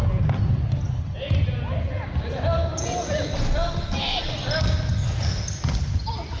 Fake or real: real